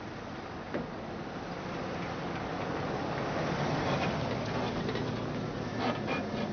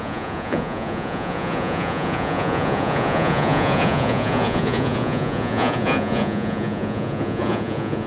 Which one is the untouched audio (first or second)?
first